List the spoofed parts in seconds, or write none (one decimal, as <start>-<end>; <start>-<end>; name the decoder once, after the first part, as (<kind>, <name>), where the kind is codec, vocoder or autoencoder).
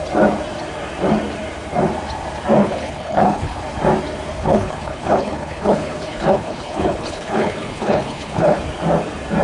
2.6-3.6 (codec, HILCodec); 4.4-8.6